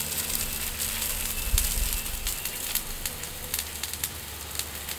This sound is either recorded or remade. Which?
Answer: recorded